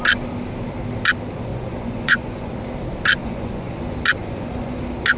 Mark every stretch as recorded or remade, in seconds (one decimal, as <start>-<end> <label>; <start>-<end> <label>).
0.0-1.5 recorded; 1.5-2.5 remade; 2.5-3.2 recorded; 3.2-3.8 remade; 3.8-4.2 recorded; 4.2-4.8 remade; 4.8-5.2 recorded